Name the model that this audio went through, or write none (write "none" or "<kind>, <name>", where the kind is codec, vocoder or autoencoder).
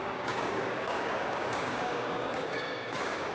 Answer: codec, DAC